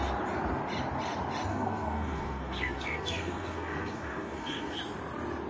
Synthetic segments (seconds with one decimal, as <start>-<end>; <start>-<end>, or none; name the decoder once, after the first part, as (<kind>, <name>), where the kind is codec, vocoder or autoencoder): 1.5-4.8 (codec, SNAC)